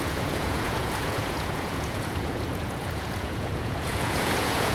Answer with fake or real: fake